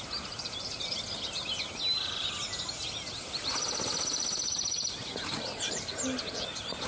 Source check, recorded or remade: recorded